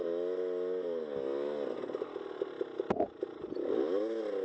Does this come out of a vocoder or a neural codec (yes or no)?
no